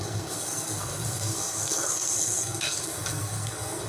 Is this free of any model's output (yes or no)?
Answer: no